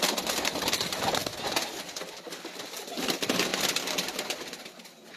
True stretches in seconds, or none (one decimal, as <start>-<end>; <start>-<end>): 0.0-5.2